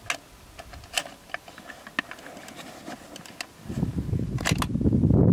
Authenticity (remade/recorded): recorded